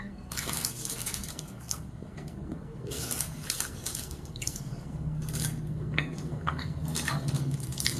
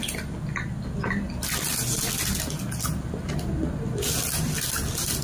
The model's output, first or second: first